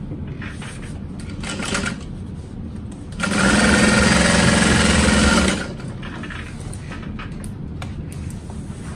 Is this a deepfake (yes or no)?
no